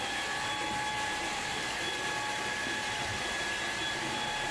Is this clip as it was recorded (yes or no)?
no